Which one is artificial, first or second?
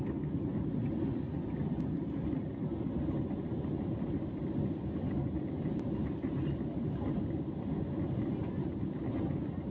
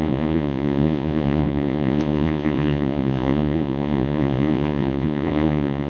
second